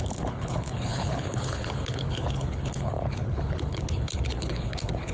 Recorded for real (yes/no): no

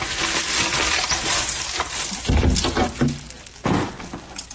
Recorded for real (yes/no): yes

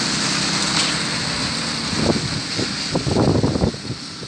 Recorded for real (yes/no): yes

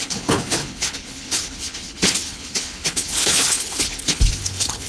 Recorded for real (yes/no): no